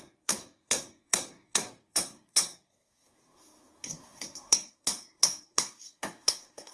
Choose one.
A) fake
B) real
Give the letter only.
A